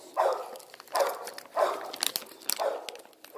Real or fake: real